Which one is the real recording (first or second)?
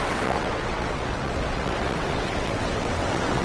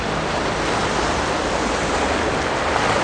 second